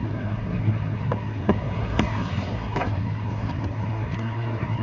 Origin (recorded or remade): remade